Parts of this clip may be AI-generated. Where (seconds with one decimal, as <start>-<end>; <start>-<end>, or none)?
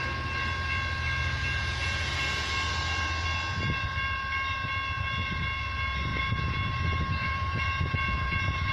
1.4-2.5; 6.1-6.7; 7.2-8.7